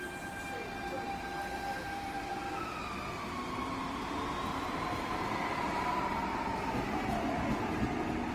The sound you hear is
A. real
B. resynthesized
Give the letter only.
A